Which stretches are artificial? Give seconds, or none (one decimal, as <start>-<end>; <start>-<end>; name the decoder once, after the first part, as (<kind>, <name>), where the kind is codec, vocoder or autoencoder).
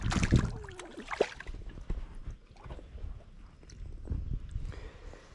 none